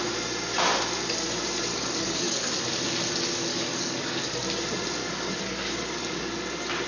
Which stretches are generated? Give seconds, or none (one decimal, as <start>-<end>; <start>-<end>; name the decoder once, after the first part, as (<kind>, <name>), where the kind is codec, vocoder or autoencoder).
1.7-2.5 (codec, DAC); 3.5-4.2; 5.0-6.3